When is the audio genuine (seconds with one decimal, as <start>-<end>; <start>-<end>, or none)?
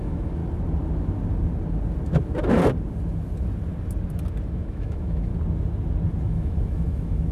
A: 0.4-4.5; 5.3-6.2